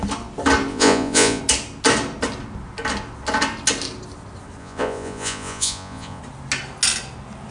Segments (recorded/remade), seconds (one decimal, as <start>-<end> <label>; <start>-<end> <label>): 0.0-0.7 recorded; 0.7-1.4 remade; 1.4-4.6 recorded; 4.6-6.2 remade; 6.2-7.5 recorded